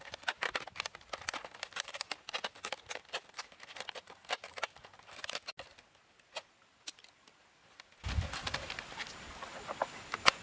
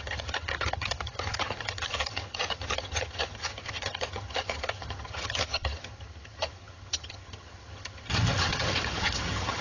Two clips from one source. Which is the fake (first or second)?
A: second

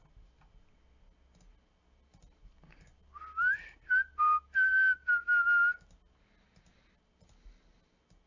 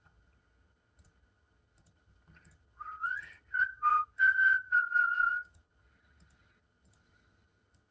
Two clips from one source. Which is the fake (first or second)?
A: second